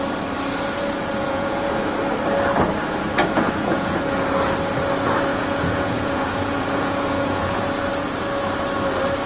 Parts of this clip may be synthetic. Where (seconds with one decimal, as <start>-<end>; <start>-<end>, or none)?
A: 1.2-1.8; 3.2-4.0; 5.3-7.9